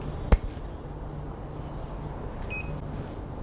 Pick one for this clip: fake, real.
real